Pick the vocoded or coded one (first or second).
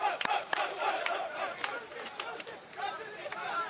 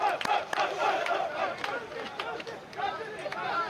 first